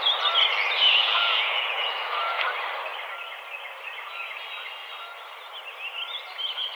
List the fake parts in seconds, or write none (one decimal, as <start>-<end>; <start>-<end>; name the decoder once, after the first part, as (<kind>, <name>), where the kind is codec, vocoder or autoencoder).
1.0-2.4 (vocoder, Vocos)